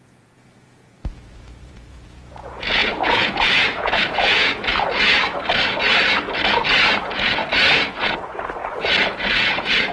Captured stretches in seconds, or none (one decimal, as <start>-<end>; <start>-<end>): 4.7-7.0; 7.4-8.0; 8.6-9.1